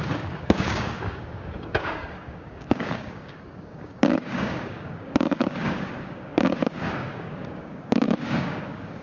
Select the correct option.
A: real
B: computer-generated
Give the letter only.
B